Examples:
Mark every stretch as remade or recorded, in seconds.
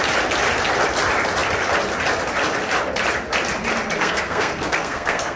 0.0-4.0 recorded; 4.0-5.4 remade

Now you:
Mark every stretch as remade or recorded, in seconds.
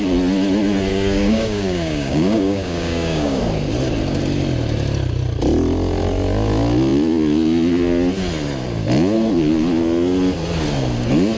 0.0-0.9 recorded; 0.9-3.4 remade; 3.4-11.4 recorded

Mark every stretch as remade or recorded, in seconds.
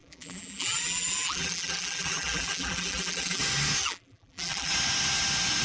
0.0-3.4 remade; 3.4-3.8 recorded; 3.8-4.7 remade; 4.7-5.6 recorded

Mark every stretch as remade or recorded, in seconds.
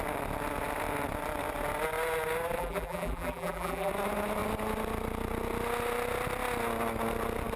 0.0-2.6 recorded; 2.6-3.9 remade; 3.9-7.6 recorded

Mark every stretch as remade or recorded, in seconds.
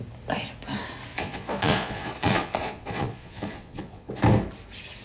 0.0-1.1 recorded; 1.1-4.1 remade; 4.1-5.0 recorded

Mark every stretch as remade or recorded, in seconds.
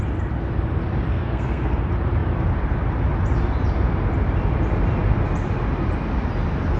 0.0-1.1 recorded; 1.1-1.7 remade; 1.7-6.8 recorded